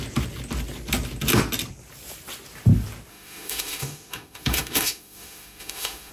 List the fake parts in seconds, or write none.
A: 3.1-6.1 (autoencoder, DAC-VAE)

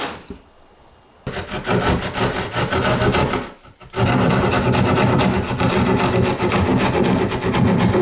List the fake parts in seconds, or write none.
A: none

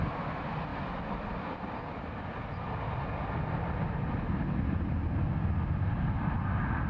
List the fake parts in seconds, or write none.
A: none